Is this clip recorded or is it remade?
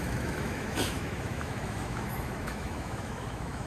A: remade